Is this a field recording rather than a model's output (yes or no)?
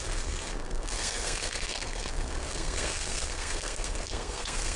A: no